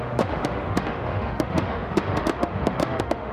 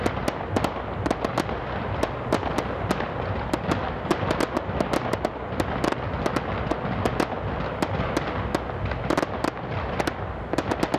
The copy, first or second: first